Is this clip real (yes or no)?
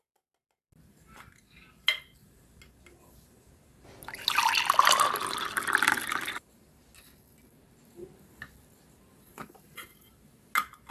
yes